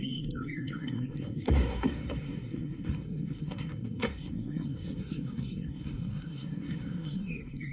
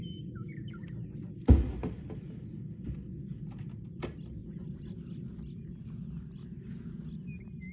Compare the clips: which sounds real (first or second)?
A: second